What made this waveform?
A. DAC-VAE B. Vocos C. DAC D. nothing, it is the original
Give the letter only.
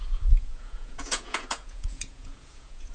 B